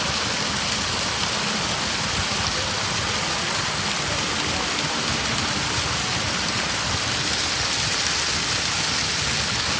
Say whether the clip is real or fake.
real